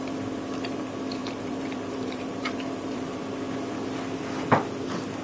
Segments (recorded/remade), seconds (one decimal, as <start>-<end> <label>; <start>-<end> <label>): 0.0-1.2 recorded; 1.2-3.2 remade; 3.2-5.2 recorded